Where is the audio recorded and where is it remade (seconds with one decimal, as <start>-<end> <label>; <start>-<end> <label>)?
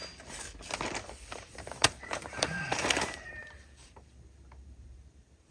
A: 0.0-1.3 recorded; 1.3-5.5 remade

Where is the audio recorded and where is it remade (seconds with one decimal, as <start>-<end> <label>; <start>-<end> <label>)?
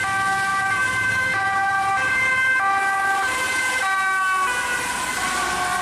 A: 0.0-0.5 recorded; 0.5-3.8 remade; 3.8-5.8 recorded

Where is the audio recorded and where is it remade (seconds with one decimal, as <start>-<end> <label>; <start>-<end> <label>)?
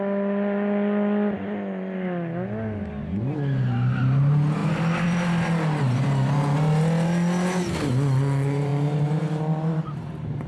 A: 0.0-8.7 recorded; 8.7-10.5 remade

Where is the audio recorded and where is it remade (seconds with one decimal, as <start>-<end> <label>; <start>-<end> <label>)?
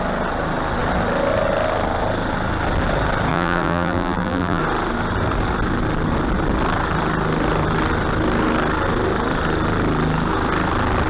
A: 0.0-3.3 recorded; 3.3-4.6 remade; 4.6-11.1 recorded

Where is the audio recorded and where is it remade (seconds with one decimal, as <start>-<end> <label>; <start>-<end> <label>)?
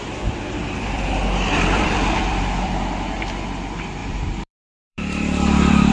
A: 0.0-0.6 recorded; 0.6-2.8 remade; 2.8-4.0 recorded; 4.0-5.9 remade